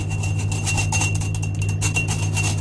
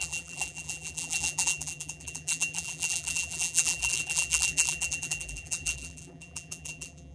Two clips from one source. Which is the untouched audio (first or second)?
first